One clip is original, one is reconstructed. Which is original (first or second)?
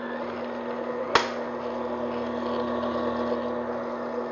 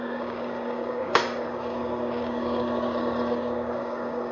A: first